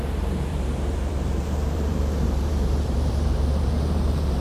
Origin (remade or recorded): remade